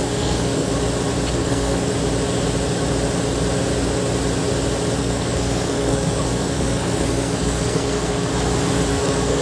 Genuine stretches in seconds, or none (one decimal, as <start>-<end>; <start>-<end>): 0.7-1.3; 1.9-5.0; 8.3-8.9